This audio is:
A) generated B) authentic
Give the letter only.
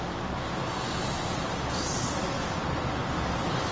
B